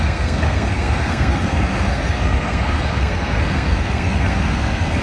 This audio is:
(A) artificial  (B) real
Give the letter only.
A